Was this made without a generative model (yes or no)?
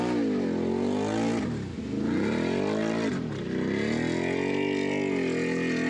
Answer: yes